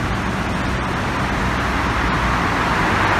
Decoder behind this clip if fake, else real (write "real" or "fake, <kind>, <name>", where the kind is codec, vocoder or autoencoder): real